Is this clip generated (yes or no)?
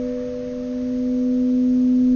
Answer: no